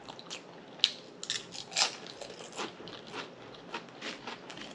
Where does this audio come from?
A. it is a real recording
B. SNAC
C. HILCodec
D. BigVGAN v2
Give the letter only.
A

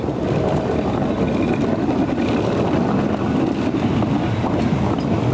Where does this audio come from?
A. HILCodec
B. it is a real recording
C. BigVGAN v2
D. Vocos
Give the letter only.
B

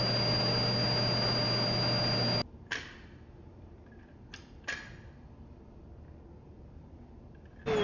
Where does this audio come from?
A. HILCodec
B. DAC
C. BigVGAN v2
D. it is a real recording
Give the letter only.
D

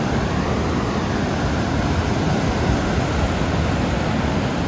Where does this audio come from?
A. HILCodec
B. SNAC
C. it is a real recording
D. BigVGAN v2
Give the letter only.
C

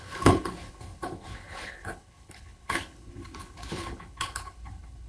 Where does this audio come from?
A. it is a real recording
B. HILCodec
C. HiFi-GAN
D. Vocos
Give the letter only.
B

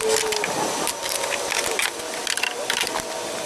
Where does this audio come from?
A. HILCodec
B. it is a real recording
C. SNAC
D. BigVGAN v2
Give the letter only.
B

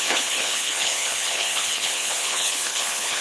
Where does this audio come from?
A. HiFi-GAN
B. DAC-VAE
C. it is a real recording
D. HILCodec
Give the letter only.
D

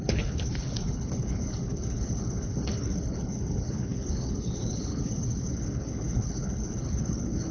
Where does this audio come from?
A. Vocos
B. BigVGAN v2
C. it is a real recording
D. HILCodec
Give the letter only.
D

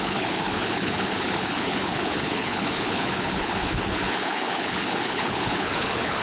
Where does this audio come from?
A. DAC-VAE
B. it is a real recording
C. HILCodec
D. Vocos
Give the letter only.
C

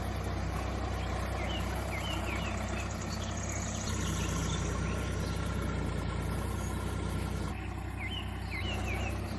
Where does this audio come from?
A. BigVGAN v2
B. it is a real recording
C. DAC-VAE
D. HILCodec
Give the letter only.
B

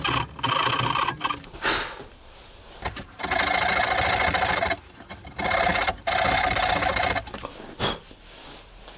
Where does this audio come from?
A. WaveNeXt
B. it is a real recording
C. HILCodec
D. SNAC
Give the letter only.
B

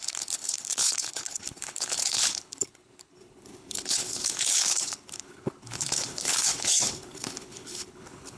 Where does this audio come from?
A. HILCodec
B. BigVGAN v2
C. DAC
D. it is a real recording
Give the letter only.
A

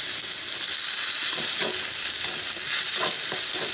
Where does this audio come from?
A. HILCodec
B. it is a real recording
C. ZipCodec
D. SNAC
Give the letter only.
B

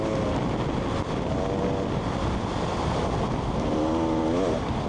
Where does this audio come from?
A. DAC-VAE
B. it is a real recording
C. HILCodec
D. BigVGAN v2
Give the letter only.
B